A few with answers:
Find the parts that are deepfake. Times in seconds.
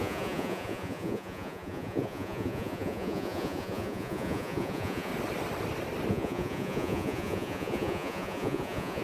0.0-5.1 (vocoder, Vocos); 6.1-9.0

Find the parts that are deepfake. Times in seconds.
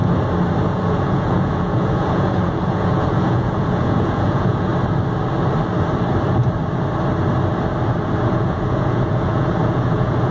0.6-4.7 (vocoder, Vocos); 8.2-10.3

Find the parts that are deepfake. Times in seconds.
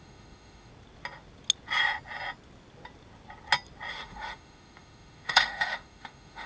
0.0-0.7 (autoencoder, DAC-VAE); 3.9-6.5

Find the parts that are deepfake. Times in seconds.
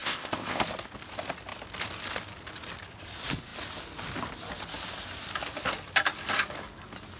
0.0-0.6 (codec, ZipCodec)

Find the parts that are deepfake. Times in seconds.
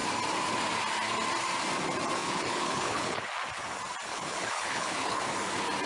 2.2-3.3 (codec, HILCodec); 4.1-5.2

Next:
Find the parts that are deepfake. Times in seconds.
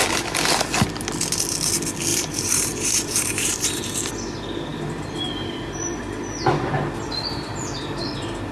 2.1-4.1 (vocoder, BigVGAN v2)